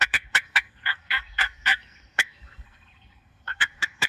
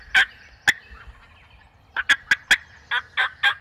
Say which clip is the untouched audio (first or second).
second